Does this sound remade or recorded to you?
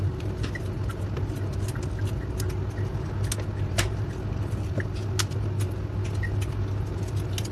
recorded